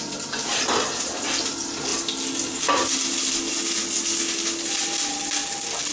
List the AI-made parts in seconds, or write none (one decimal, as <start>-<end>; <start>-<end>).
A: none